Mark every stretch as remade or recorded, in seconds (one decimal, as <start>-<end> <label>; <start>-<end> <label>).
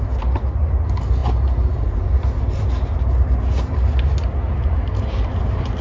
0.0-5.8 recorded